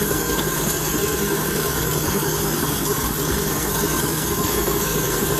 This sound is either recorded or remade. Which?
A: remade